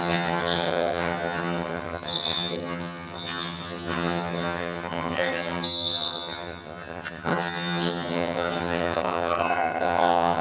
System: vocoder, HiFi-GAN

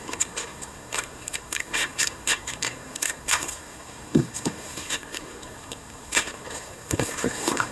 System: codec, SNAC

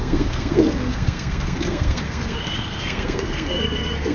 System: codec, SNAC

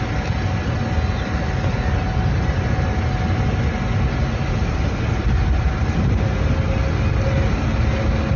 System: none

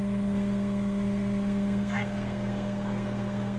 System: codec, SNAC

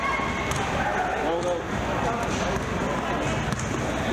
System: none